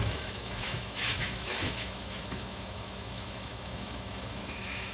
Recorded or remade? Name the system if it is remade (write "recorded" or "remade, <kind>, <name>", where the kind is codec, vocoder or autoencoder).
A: remade, autoencoder, DAC-VAE